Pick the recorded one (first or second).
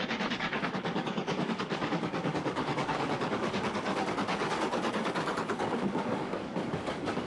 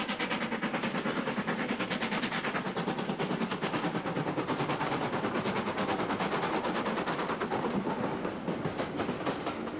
second